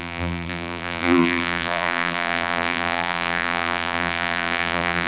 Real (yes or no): no